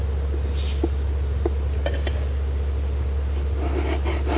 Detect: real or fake real